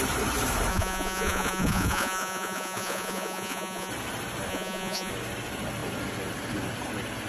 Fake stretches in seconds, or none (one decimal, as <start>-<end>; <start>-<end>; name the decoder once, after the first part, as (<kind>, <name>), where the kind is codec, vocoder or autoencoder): 0.7-3.9 (vocoder, Vocos); 4.5-5.1